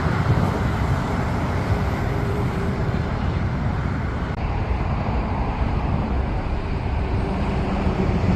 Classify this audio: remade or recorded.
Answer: remade